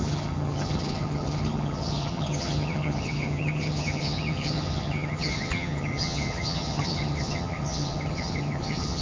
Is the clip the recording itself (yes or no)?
no